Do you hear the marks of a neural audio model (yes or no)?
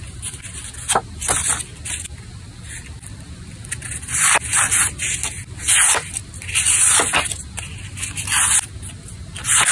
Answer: no